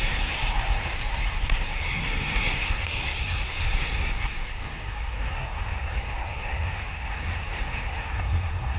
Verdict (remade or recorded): remade